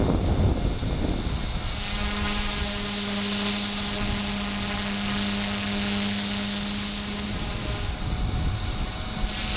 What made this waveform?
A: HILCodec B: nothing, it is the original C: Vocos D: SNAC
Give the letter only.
B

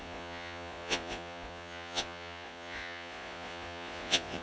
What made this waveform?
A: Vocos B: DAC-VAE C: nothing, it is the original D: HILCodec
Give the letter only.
A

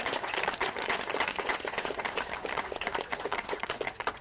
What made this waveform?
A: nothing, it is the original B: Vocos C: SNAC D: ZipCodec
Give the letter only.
B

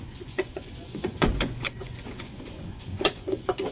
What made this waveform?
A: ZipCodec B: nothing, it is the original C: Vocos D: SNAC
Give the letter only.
C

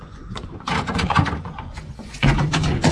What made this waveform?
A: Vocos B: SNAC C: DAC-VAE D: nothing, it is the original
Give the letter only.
A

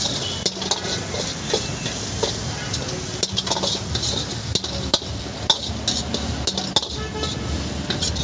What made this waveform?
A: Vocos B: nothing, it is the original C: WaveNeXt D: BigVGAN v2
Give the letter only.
B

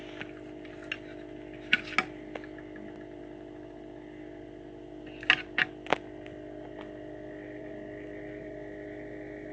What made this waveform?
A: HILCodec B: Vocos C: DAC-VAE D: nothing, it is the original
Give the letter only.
D